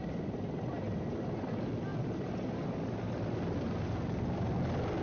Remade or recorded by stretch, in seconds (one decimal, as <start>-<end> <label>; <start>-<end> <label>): 0.0-5.0 recorded